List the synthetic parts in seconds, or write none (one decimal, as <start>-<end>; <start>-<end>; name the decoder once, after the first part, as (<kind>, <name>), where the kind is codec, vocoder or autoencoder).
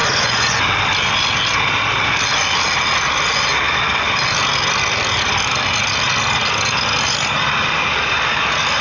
0.0-0.6 (vocoder, Vocos)